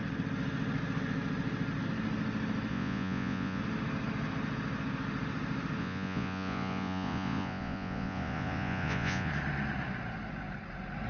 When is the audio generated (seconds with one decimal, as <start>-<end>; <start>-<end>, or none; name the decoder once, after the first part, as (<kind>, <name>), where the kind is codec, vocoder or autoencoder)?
2.7-3.6 (vocoder, Vocos); 5.8-9.3